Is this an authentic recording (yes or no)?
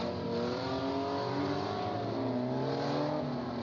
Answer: yes